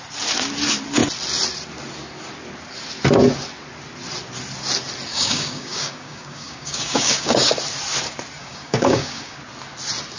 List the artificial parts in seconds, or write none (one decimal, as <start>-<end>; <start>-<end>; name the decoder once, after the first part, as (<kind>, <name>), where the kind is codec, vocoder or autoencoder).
5.1-7.5 (codec, DAC); 8.4-9.4